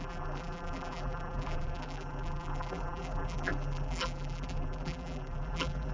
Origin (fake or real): fake